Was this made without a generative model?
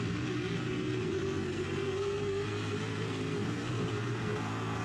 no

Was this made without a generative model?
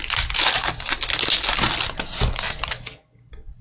yes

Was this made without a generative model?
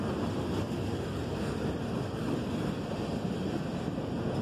yes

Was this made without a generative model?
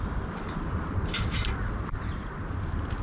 yes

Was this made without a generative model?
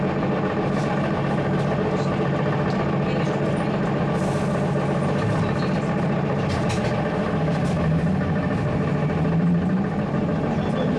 yes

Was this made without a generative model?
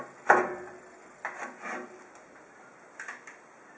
yes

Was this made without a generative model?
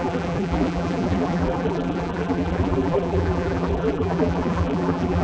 no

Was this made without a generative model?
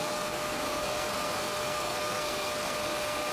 no